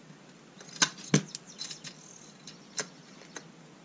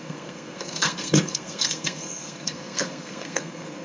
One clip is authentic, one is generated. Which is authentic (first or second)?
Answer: first